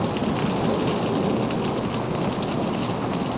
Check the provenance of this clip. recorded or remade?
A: recorded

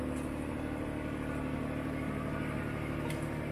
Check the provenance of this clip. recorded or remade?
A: recorded